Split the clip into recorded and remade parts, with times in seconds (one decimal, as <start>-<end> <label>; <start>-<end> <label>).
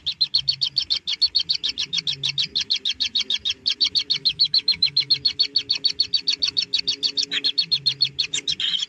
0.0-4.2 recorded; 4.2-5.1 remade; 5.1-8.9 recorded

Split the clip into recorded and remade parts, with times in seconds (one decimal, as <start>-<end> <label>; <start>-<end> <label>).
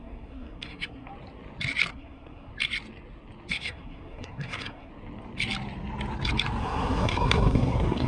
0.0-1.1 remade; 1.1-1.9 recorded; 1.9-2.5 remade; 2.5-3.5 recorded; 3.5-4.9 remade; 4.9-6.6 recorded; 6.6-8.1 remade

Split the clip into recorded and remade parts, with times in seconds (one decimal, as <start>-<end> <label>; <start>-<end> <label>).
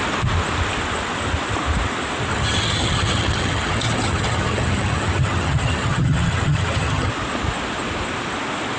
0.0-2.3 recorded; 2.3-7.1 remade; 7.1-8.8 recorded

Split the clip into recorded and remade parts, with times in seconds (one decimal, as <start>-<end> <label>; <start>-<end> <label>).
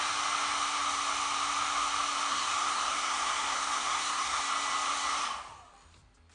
0.0-2.3 recorded; 2.3-4.4 remade; 4.4-6.3 recorded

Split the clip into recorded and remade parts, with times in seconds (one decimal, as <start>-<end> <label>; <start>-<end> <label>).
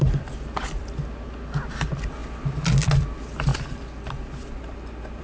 0.0-5.2 recorded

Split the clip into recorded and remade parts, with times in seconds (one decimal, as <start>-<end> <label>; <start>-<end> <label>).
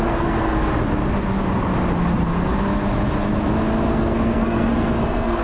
0.0-0.7 remade; 0.7-3.9 recorded; 3.9-5.4 remade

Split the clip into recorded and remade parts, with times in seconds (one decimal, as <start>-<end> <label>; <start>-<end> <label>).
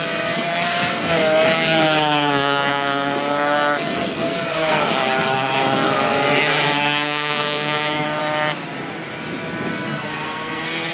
0.0-8.2 remade; 8.2-9.7 recorded; 9.7-10.9 remade